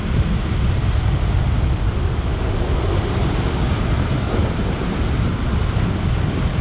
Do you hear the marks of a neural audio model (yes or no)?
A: no